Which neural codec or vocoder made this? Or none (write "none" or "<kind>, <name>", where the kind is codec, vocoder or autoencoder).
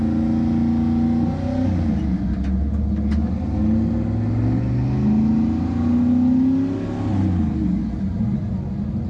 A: none